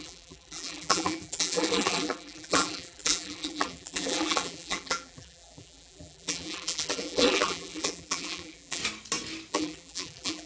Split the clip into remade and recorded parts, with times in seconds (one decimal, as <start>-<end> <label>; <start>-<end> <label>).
0.0-8.8 remade; 8.8-9.5 recorded; 9.5-10.5 remade